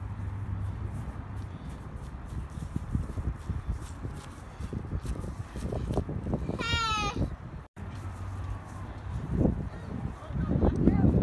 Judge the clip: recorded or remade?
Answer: remade